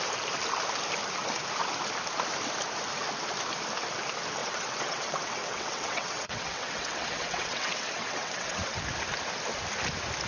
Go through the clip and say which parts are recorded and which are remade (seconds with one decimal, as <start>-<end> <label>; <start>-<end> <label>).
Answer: 0.0-4.4 recorded; 4.4-8.8 remade; 8.8-10.3 recorded